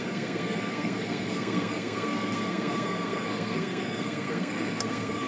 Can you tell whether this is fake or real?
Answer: fake